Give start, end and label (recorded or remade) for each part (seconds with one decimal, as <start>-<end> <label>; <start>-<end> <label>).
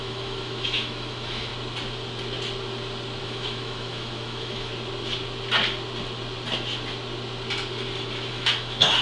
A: 0.0-1.5 remade; 1.5-3.2 recorded; 3.2-4.7 remade; 4.7-8.3 recorded; 8.3-9.0 remade